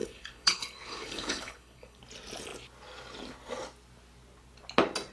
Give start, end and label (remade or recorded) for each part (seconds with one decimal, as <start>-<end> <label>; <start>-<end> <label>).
0.0-2.0 remade; 2.0-5.1 recorded